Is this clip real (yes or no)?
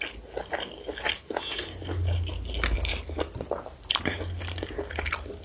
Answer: yes